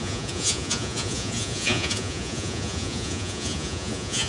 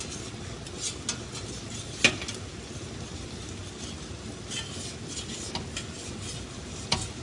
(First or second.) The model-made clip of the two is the first